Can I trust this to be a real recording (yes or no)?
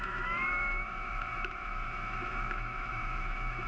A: no